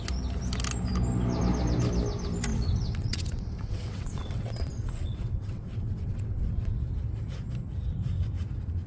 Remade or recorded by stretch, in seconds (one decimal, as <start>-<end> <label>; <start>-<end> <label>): 0.0-2.5 recorded; 2.5-6.9 remade; 6.9-8.9 recorded

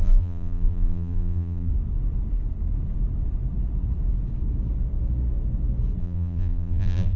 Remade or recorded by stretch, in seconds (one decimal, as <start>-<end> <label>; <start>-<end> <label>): 0.0-1.7 remade; 1.7-6.0 recorded; 6.0-7.2 remade

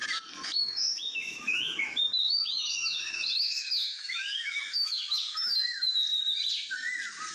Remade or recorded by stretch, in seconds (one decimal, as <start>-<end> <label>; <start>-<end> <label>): 0.0-0.6 recorded; 0.6-6.0 remade; 6.0-7.3 recorded

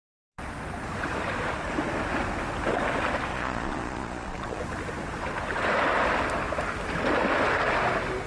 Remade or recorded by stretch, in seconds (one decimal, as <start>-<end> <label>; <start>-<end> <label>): 0.0-3.3 recorded; 3.3-4.6 remade; 4.6-8.3 recorded

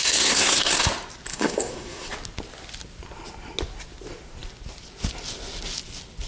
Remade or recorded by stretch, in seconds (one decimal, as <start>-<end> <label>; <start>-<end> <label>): 0.0-0.9 remade; 0.9-1.3 recorded; 1.3-2.1 remade; 2.1-6.3 recorded